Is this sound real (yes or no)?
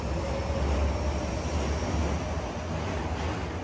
yes